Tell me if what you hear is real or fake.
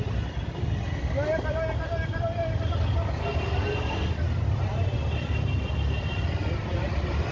real